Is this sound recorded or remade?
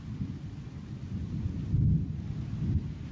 recorded